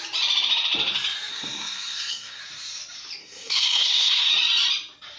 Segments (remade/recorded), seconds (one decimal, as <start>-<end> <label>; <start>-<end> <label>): 0.0-1.3 recorded; 1.3-2.4 remade; 2.4-3.2 recorded; 3.2-4.3 remade; 4.3-5.2 recorded